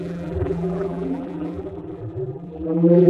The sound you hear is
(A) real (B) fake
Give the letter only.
B